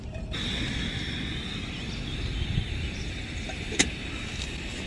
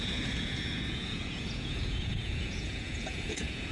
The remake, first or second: second